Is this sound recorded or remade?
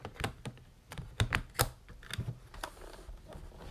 recorded